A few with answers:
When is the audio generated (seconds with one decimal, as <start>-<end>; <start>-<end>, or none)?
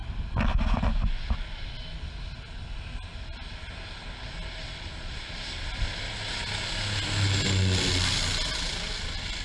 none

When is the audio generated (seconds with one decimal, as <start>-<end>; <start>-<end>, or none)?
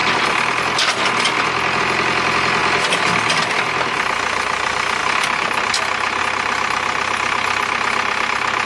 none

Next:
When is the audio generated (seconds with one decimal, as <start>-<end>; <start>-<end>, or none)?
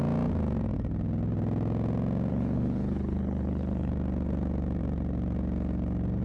2.3-3.9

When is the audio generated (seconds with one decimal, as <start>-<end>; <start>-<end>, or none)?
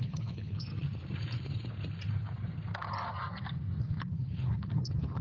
0.0-0.7; 3.8-5.2